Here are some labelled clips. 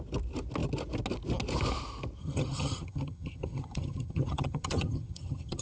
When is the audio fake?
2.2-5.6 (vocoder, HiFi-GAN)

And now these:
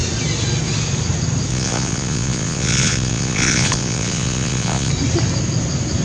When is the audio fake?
1.5-4.9 (vocoder, Vocos)

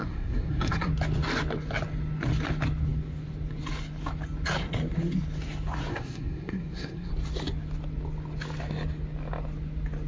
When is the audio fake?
0.0-0.9 (codec, SNAC); 5.9-7.1

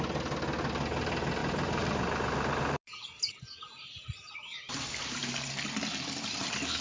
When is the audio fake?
1.4-5.5 (vocoder, BigVGAN v2)

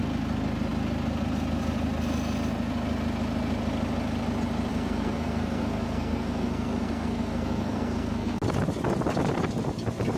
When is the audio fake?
4.7-8.4 (codec, SNAC)